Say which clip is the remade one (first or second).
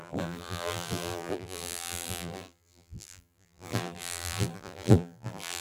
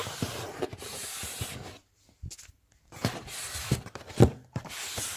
first